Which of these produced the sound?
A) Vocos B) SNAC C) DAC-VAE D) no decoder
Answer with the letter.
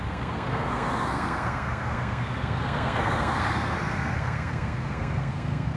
B